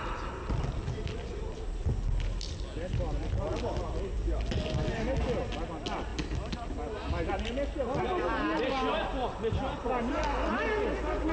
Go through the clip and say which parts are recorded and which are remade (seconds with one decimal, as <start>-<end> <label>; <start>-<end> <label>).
0.0-11.3 recorded